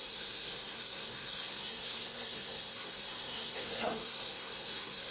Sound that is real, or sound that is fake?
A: fake